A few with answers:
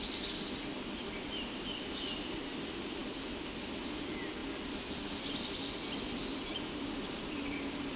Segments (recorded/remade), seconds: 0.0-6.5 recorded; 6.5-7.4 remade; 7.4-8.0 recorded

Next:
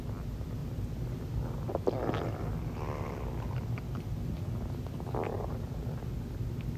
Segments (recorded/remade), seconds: 0.0-6.8 recorded

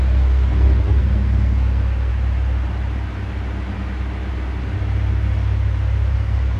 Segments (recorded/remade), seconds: 0.0-2.1 remade; 2.1-6.1 recorded; 6.1-6.6 remade

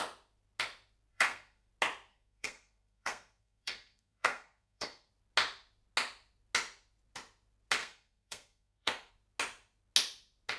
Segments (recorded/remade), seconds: 0.0-1.1 recorded; 1.1-1.7 remade; 1.7-2.1 recorded; 2.1-5.1 remade; 5.1-7.8 recorded; 7.8-9.1 remade; 9.1-10.6 recorded